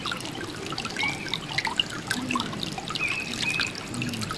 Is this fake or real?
real